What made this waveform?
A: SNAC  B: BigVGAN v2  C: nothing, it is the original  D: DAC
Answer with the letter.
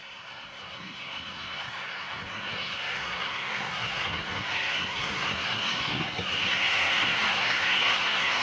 A